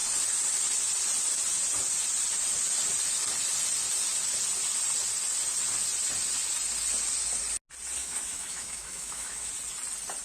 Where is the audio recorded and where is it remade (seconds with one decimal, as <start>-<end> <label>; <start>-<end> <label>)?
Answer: 0.0-8.0 recorded; 8.0-9.5 remade; 9.5-10.2 recorded